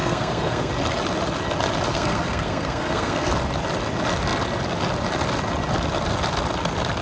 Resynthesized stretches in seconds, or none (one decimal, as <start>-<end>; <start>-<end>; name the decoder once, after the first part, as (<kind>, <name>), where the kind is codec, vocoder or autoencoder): 0.0-0.7 (codec, SNAC); 1.9-3.3